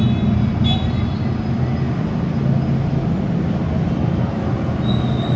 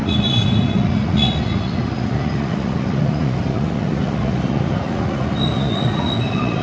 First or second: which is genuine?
first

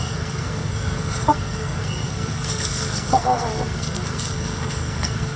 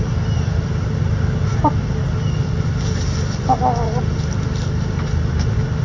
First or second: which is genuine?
second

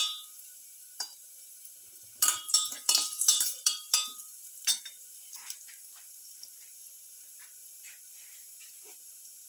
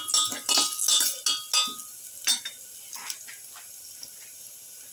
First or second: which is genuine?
second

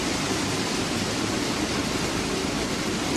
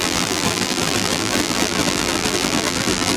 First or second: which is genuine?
first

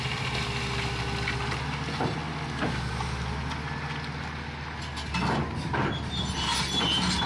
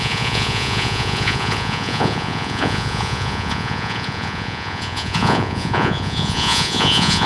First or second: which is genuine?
first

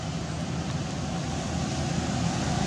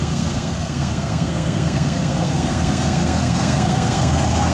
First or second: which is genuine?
first